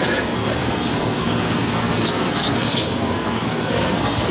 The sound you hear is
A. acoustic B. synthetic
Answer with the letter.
B